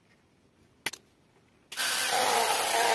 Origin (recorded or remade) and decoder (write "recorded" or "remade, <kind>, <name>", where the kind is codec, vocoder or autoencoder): recorded